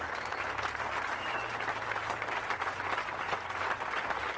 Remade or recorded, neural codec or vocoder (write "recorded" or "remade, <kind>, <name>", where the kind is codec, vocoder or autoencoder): recorded